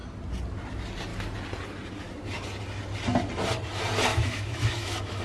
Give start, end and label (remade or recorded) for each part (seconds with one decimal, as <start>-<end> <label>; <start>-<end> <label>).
0.0-4.1 recorded; 4.1-5.2 remade